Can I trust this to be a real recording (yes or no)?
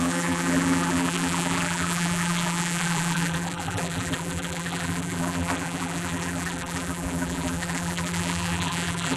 no